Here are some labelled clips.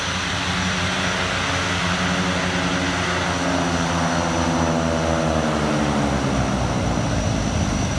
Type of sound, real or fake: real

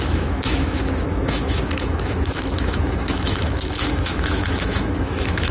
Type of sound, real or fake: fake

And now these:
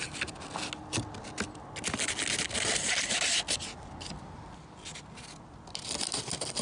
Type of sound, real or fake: real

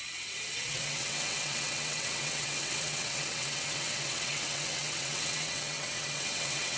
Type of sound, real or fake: fake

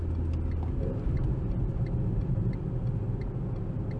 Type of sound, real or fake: real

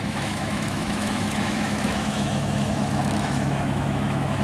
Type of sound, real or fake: fake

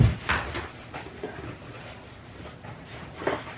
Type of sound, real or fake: real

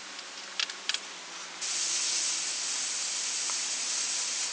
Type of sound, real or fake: real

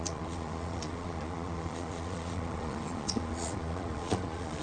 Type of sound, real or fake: fake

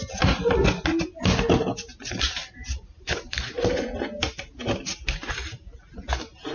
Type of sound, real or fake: real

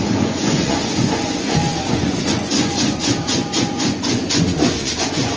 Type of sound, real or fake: fake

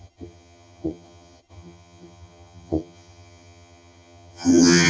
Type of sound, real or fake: fake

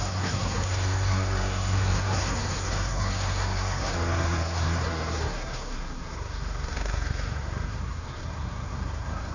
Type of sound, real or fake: fake